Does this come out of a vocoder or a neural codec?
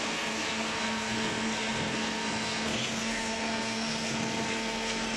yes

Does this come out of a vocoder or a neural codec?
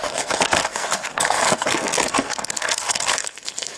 yes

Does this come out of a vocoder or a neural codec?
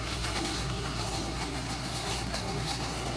yes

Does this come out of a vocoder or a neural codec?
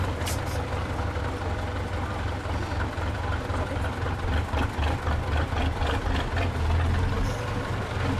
no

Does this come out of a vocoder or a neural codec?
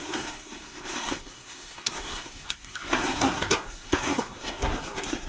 yes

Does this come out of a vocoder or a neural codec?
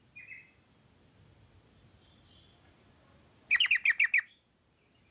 no